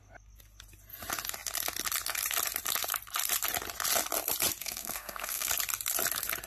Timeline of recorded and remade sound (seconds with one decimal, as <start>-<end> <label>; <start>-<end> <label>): 0.0-4.6 recorded; 4.6-5.5 remade; 5.5-6.5 recorded